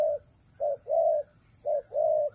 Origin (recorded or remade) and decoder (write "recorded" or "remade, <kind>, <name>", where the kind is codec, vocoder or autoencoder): recorded